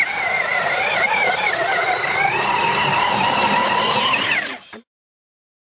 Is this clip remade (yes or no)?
yes